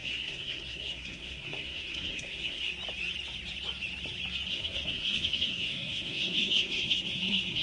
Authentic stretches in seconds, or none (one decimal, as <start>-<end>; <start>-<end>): 2.7-4.5